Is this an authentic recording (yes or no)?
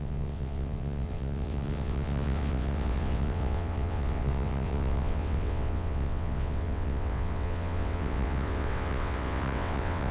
no